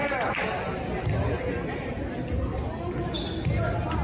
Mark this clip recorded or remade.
recorded